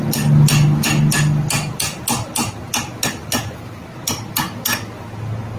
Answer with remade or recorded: recorded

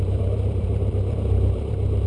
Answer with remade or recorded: remade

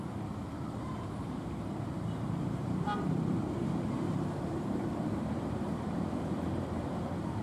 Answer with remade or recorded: remade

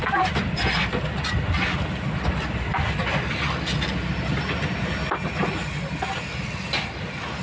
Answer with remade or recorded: recorded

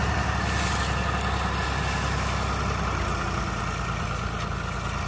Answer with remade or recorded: recorded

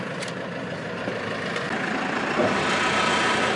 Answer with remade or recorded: recorded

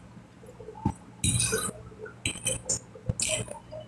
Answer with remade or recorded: recorded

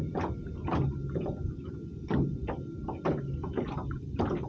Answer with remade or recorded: recorded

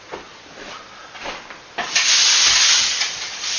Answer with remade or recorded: recorded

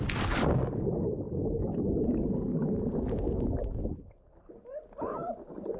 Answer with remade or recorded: recorded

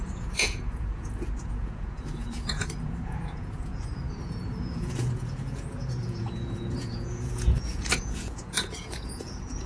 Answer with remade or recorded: remade